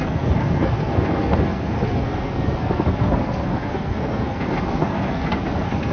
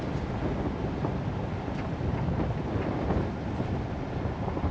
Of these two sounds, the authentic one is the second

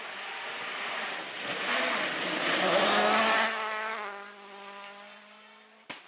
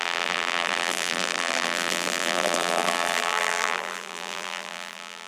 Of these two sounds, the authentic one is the first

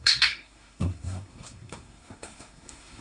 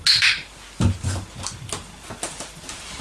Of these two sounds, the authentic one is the second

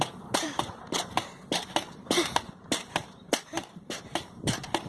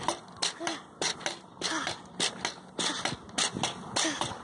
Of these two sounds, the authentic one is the second